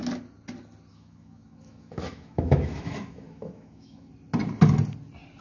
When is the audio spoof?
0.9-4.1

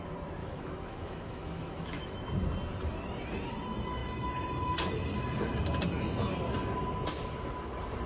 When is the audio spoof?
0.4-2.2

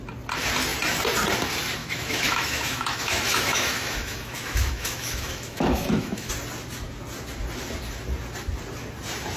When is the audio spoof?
1.8-6.3

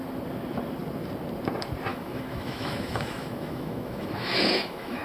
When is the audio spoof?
1.9-5.0

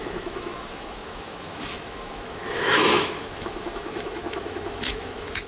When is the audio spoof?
0.0-5.5

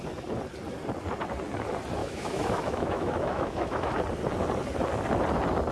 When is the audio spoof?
2.0-3.9